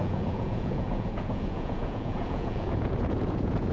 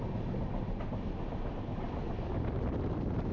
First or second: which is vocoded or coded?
first